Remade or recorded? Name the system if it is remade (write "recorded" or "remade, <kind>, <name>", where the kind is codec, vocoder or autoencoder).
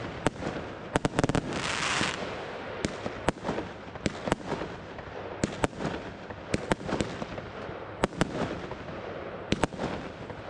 recorded